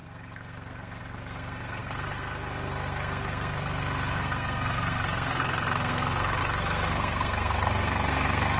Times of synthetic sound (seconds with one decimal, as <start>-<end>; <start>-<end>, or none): 0.0-8.6

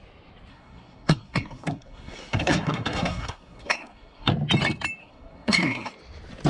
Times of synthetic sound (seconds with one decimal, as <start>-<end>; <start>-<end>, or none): 0.5-4.3; 5.0-5.9

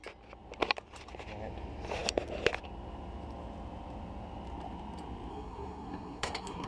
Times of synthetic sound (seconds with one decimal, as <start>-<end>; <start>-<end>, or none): 5.3-6.7

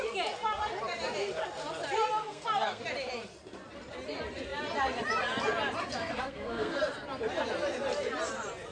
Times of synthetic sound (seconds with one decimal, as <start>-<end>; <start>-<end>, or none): 2.2-2.8; 6.0-6.8

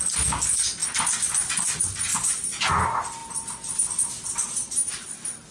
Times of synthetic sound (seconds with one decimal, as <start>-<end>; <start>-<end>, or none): none

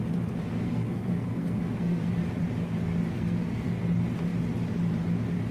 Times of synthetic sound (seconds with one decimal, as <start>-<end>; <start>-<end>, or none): 0.4-2.1; 3.1-3.7

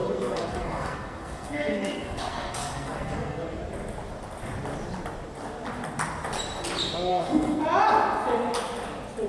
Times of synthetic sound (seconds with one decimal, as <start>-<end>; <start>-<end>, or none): 0.0-3.6; 7.1-7.6